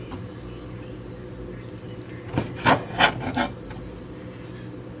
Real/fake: real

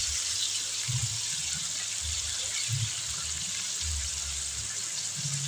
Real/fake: real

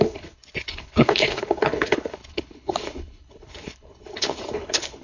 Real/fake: fake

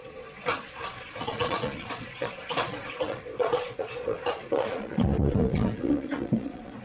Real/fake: fake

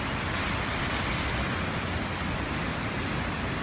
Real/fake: real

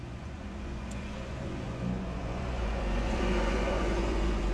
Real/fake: fake